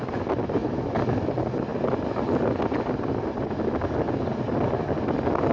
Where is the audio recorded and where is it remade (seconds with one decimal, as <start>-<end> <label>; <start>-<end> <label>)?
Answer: 0.0-5.5 recorded